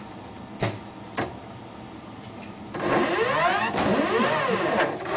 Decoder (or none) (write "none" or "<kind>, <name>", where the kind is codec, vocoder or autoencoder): none